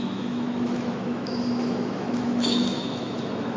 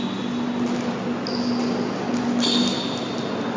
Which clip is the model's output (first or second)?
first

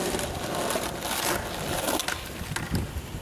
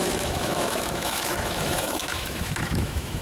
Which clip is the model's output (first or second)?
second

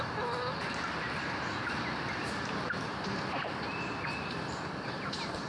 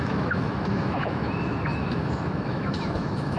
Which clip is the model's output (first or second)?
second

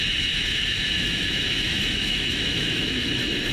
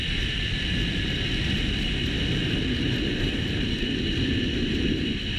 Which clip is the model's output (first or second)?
first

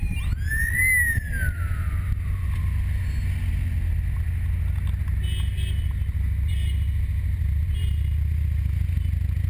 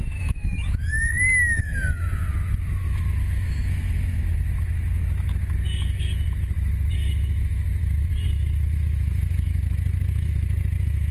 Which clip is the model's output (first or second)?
second